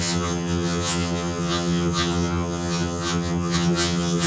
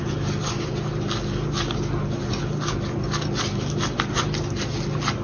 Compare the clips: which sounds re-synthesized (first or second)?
first